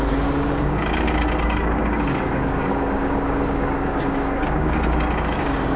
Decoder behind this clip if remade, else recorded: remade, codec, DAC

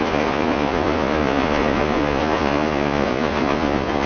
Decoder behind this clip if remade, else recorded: remade, vocoder, Vocos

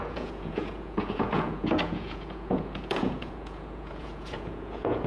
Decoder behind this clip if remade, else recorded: remade, vocoder, Vocos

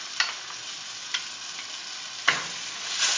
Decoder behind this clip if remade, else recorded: recorded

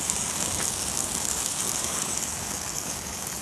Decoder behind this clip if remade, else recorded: remade, codec, DAC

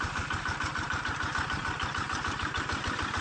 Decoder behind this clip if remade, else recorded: remade, vocoder, BigVGAN v2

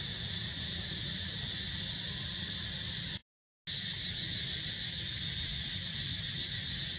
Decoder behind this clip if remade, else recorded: recorded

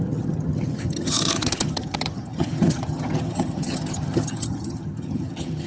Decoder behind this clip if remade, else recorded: remade, vocoder, HiFi-GAN